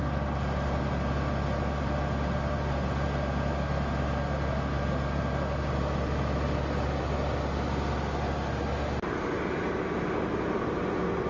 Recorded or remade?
recorded